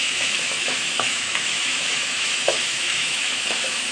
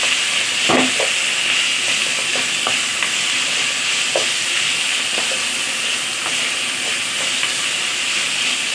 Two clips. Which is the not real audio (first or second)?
first